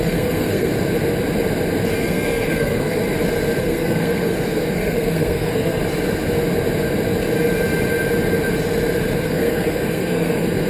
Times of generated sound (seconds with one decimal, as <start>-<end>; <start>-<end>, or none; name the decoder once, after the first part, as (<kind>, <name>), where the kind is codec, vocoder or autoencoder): 0.0-0.7 (codec, SNAC); 2.0-3.0; 3.6-5.8; 9.2-10.7